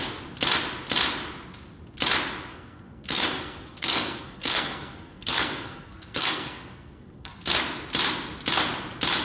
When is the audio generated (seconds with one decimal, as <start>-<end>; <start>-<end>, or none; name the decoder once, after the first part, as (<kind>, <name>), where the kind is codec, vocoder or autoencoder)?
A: 2.5-7.5 (codec, SNAC)